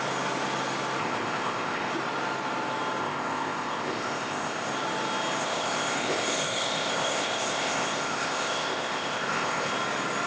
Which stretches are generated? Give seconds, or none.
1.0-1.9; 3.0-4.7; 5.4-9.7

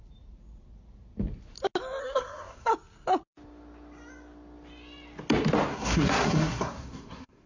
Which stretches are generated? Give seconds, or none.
2.0-2.7; 5.7-7.5

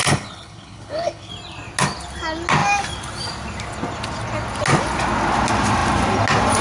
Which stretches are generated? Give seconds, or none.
0.0-1.3

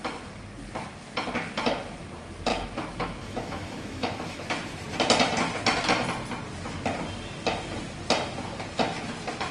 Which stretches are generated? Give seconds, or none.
2.5-4.4

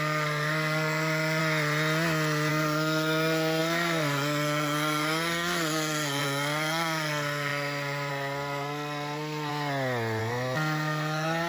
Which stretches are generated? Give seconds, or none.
0.0-1.4; 2.5-9.5; 10.2-11.5

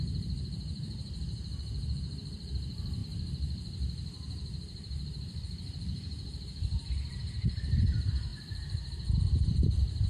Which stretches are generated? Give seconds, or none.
0.0-10.1

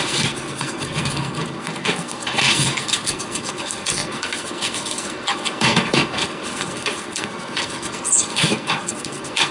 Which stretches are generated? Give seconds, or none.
0.0-9.5